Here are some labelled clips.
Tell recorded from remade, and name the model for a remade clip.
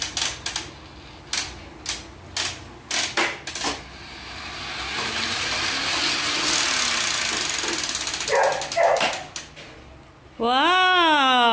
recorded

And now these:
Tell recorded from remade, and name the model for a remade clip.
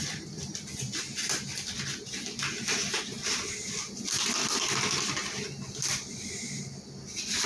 recorded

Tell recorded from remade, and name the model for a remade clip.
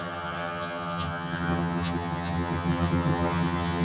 remade, vocoder, HiFi-GAN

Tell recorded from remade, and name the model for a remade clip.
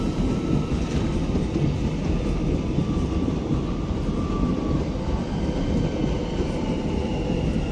recorded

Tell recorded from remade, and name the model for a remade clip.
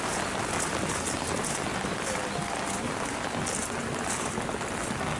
recorded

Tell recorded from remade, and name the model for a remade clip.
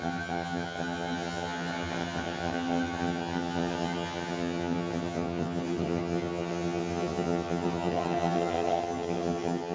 remade, vocoder, HiFi-GAN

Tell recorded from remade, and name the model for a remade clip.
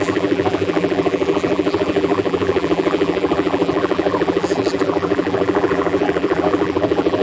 remade, vocoder, BigVGAN v2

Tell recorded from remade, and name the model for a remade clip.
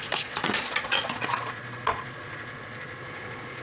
remade, vocoder, Vocos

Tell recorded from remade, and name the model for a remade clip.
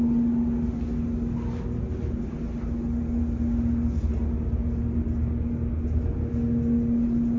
recorded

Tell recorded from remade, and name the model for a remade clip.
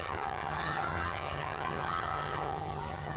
remade, vocoder, HiFi-GAN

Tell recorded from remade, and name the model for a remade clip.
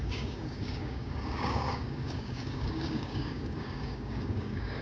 remade, codec, DAC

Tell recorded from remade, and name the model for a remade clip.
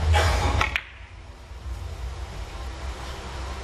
recorded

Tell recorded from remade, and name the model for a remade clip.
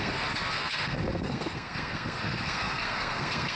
remade, codec, SNAC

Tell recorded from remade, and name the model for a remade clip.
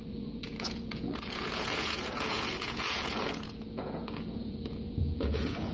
remade, vocoder, Vocos